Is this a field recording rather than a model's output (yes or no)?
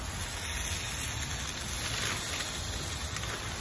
yes